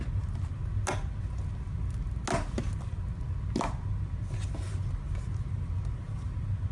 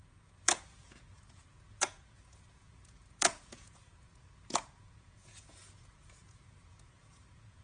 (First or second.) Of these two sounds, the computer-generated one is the second